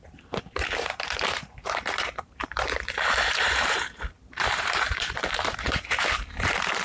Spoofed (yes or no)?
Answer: yes